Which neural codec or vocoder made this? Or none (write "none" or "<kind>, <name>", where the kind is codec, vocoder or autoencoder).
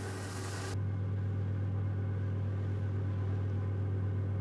none